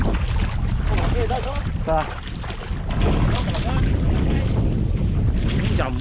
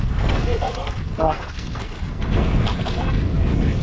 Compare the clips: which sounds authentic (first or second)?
first